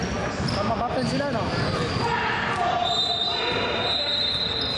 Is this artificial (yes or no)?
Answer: no